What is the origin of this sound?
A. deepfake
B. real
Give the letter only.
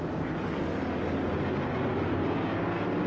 B